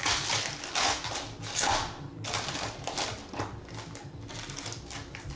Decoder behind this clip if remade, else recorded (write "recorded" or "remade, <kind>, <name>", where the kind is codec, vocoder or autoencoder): recorded